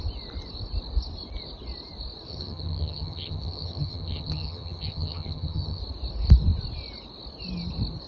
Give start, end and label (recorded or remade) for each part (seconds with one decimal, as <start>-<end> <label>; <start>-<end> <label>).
0.0-2.3 recorded; 2.3-5.8 remade; 5.8-8.1 recorded